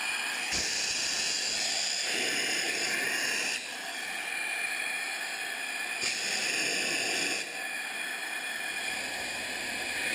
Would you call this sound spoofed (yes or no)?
no